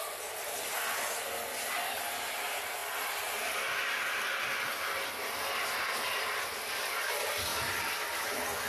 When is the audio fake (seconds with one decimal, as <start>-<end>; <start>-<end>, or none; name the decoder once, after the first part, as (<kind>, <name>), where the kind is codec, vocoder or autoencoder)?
none